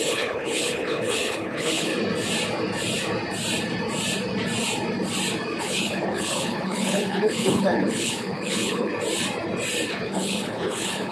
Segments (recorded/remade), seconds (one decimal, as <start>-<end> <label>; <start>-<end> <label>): 0.0-1.9 remade; 1.9-5.6 recorded; 5.6-8.9 remade; 8.9-9.9 recorded; 9.9-11.1 remade